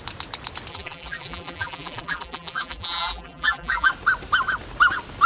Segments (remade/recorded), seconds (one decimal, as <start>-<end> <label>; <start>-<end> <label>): 0.0-0.7 recorded; 0.7-3.9 remade; 3.9-5.3 recorded